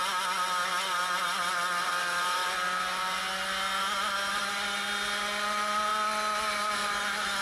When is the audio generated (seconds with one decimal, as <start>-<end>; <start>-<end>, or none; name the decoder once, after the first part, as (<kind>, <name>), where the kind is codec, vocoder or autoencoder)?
none